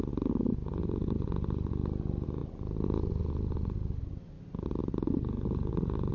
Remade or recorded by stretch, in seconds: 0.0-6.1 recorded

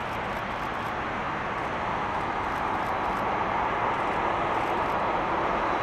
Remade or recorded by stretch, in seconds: 0.0-5.8 recorded